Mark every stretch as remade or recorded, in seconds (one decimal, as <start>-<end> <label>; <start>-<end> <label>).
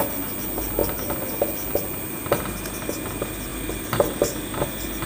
0.0-3.5 recorded; 3.5-4.2 remade; 4.2-5.1 recorded